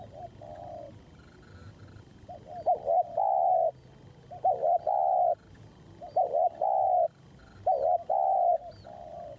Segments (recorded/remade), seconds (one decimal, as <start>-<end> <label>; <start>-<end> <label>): 0.0-9.4 recorded